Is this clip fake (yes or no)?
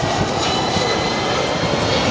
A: no